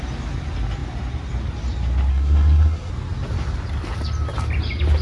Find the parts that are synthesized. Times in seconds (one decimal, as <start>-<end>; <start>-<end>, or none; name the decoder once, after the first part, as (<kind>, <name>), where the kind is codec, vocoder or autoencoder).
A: 2.1-2.9 (codec, SNAC)